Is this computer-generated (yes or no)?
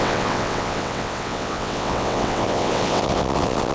yes